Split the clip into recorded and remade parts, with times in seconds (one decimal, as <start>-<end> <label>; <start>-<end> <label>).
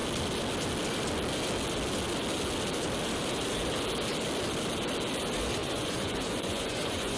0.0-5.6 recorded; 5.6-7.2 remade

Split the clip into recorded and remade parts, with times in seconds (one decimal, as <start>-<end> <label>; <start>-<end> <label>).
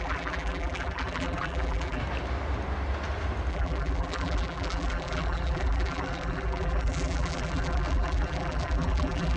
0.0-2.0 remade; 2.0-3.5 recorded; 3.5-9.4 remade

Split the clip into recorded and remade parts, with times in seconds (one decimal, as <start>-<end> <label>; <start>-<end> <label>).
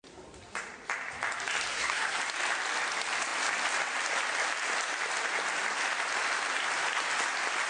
0.0-1.7 recorded; 1.7-2.2 remade; 2.2-7.7 recorded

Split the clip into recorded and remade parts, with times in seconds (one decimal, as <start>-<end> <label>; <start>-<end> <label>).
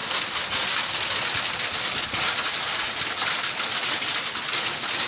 0.0-5.1 recorded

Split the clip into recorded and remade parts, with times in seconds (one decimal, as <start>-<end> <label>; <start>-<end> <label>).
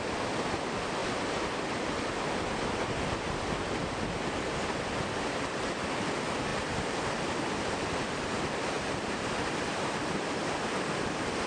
0.0-11.5 recorded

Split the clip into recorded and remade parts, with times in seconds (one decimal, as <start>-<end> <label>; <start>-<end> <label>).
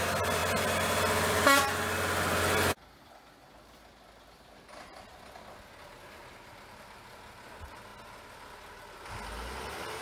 0.0-10.0 recorded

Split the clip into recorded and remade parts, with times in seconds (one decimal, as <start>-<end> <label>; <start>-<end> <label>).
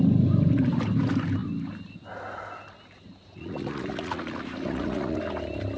0.0-3.2 recorded; 3.2-5.2 remade; 5.2-5.8 recorded